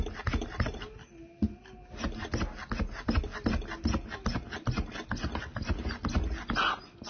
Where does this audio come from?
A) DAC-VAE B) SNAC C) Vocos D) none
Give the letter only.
D